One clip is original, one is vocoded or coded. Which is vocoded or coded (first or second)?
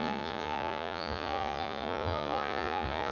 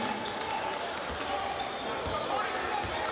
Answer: first